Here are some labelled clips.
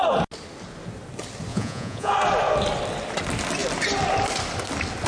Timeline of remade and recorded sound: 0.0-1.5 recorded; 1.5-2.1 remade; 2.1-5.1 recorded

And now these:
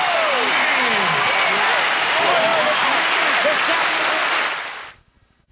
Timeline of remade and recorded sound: 0.0-5.5 recorded

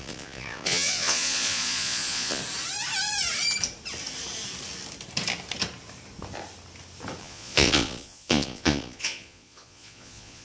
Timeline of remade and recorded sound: 0.0-2.4 remade; 2.4-7.2 recorded; 7.2-10.4 remade

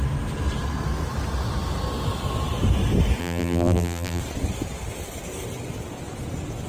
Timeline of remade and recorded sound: 0.0-3.2 recorded; 3.2-4.2 remade; 4.2-6.7 recorded